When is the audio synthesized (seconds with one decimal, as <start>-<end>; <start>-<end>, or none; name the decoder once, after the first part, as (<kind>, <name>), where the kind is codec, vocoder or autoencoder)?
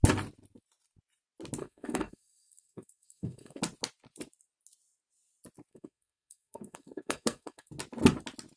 1.6-3.6 (codec, SNAC); 5.7-7.7